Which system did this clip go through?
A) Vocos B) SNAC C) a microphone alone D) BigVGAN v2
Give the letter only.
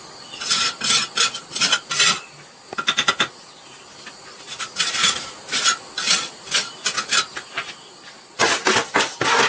C